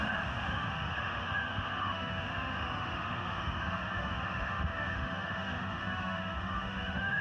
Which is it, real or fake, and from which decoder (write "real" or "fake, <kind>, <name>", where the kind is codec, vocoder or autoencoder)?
fake, autoencoder, DAC-VAE